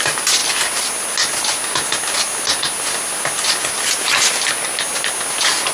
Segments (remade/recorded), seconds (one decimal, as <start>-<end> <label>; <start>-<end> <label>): 0.0-5.7 recorded